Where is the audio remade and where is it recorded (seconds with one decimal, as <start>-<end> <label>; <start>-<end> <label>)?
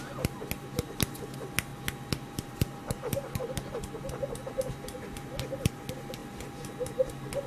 0.0-7.5 recorded